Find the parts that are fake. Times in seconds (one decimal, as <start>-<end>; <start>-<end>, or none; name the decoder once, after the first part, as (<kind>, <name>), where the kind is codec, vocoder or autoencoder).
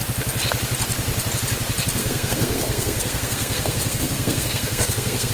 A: 2.0-5.3 (codec, SNAC)